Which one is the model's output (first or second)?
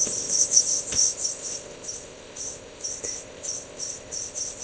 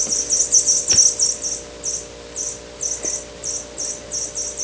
first